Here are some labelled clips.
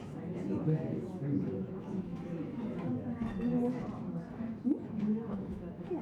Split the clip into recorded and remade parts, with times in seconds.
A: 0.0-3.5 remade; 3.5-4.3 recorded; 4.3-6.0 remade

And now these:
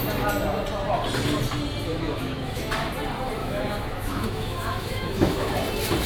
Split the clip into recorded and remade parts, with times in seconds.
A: 0.0-1.9 recorded; 1.9-2.7 remade; 2.7-3.4 recorded; 3.4-5.5 remade; 5.5-6.1 recorded

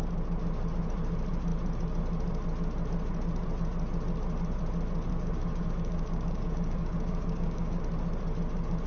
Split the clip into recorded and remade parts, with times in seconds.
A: 0.0-5.1 recorded; 5.1-7.8 remade; 7.8-8.9 recorded

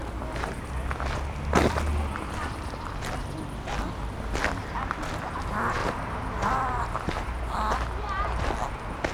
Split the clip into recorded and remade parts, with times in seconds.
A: 0.0-5.8 recorded; 5.8-7.4 remade; 7.4-9.1 recorded

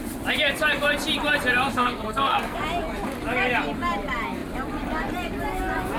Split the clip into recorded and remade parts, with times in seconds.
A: 0.0-1.7 recorded; 1.7-2.6 remade; 2.6-6.0 recorded

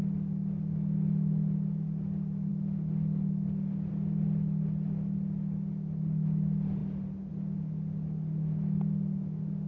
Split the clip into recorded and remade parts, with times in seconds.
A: 0.0-9.7 recorded

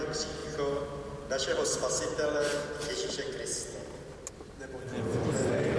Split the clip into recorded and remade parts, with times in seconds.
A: 0.0-5.8 recorded

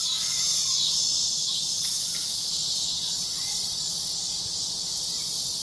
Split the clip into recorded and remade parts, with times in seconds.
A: 0.0-0.5 recorded; 0.5-3.9 remade; 3.9-5.6 recorded